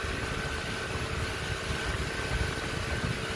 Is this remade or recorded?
recorded